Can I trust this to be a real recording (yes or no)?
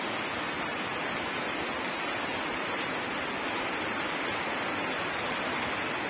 yes